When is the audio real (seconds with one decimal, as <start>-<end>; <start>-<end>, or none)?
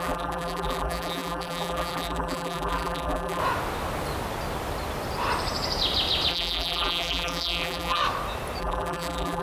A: 3.4-6.3; 8.0-8.6